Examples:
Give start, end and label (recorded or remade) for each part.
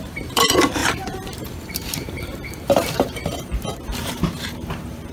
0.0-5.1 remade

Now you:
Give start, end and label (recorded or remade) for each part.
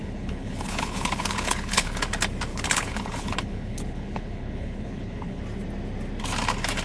0.0-2.0 remade; 2.0-2.5 recorded; 2.5-5.4 remade; 5.4-6.8 recorded